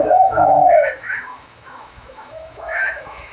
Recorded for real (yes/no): no